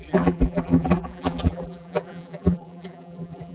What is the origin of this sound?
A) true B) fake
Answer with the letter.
B